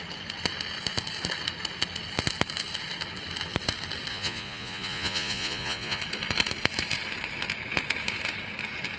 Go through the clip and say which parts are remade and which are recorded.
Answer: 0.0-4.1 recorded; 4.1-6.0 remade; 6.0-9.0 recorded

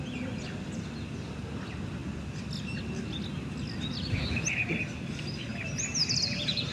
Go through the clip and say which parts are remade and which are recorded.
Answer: 0.0-6.7 recorded

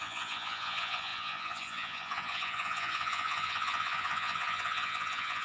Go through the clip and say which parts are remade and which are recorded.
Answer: 0.0-5.4 remade